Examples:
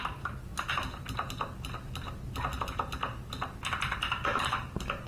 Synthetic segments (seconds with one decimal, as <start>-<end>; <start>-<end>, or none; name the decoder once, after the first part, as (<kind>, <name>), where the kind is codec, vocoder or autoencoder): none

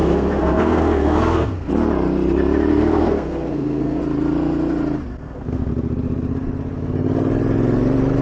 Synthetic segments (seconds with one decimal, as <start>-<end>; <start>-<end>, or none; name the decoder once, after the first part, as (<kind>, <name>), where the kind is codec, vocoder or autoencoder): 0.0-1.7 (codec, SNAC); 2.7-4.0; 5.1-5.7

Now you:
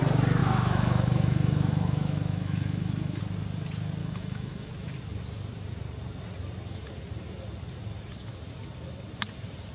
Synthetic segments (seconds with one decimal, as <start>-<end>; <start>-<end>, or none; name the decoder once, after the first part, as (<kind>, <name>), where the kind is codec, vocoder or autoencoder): 0.4-3.2 (autoencoder, DAC-VAE); 4.0-4.7

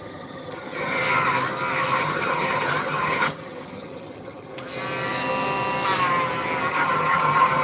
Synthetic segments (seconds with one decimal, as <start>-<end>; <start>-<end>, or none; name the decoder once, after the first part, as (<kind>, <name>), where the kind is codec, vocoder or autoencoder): 0.0-1.0 (vocoder, HiFi-GAN); 2.0-4.5; 6.7-7.6

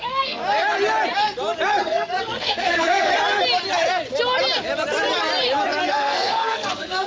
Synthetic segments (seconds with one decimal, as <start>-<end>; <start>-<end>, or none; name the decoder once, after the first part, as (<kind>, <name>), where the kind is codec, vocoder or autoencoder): 0.0-0.4 (codec, SNAC); 1.8-3.1; 5.9-7.1

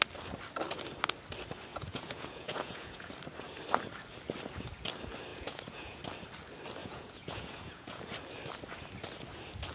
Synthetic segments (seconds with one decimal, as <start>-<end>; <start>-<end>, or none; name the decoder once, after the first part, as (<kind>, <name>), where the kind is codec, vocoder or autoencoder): 1.7-3.1 (vocoder, Vocos); 5.3-6.0; 6.8-8.0

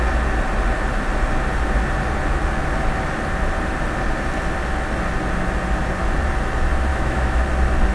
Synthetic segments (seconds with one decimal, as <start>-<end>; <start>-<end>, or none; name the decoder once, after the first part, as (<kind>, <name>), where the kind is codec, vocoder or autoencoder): 6.9-7.4 (autoencoder, DAC-VAE)

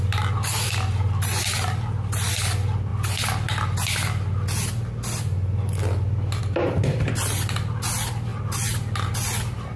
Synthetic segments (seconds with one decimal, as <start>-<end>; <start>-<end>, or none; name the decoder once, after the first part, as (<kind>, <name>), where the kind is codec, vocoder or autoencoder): 0.0-2.9 (vocoder, BigVGAN v2); 6.4-8.3; 9.1-9.8